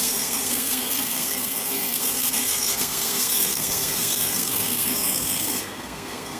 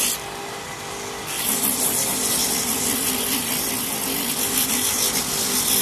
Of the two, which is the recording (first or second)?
second